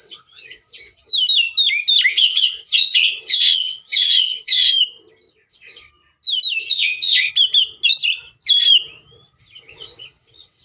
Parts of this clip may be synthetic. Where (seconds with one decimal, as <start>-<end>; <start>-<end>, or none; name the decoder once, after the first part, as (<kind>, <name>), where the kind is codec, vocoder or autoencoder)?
0.0-1.0 (vocoder, WaveNeXt); 2.1-4.7; 5.5-5.9; 6.6-7.3; 9.4-10.6